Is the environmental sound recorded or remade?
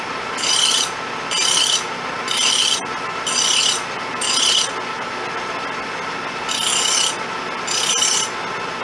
recorded